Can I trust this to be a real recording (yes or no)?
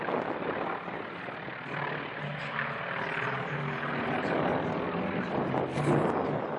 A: yes